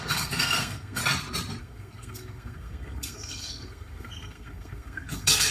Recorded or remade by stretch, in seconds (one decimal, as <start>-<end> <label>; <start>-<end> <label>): 0.0-1.0 remade; 1.0-1.6 recorded; 1.6-5.5 remade